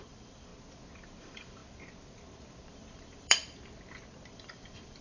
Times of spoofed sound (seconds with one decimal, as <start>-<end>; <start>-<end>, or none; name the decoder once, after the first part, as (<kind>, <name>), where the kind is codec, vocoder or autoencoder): 0.0-0.5 (vocoder, BigVGAN v2); 1.2-1.6; 2.7-3.4; 4.3-5.0